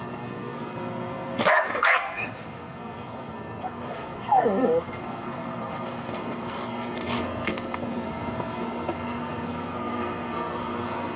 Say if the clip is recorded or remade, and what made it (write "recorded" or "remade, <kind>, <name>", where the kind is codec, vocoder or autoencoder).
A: remade, codec, SNAC